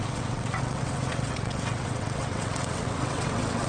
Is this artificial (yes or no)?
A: yes